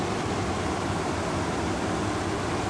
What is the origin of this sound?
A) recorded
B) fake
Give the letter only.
A